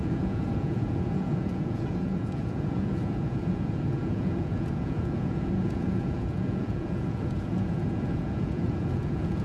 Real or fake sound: fake